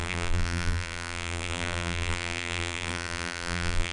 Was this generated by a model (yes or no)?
yes